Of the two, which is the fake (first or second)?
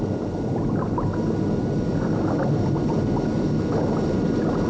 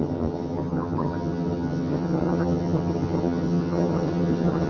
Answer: second